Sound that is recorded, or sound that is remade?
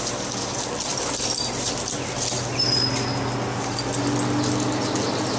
recorded